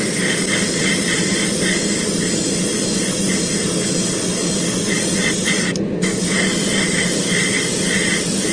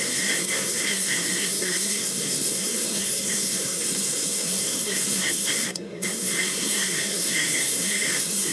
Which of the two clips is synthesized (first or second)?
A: second